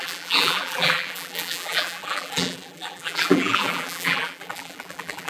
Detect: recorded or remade remade